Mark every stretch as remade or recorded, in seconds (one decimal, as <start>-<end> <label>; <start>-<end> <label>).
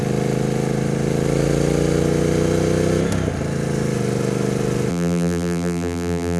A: 0.0-4.9 recorded; 4.9-6.4 remade